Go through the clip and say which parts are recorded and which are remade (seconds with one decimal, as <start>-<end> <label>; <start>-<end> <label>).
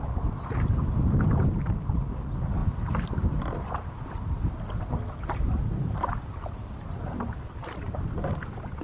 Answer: 0.0-8.8 recorded